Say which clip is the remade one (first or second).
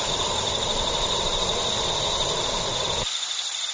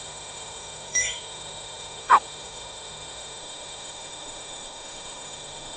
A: second